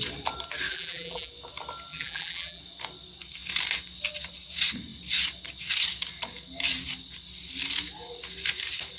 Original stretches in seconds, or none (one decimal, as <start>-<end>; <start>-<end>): 0.0-0.7; 1.3-1.9; 2.6-9.0